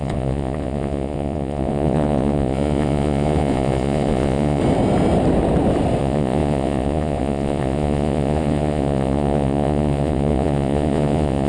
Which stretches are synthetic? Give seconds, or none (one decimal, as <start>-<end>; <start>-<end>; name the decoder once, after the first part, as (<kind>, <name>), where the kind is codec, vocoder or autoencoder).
0.0-4.6 (vocoder, Vocos); 6.0-11.5